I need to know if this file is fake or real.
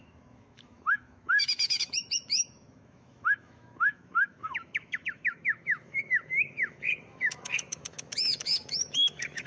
fake